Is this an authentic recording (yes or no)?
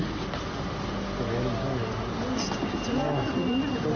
yes